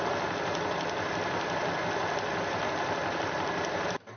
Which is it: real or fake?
real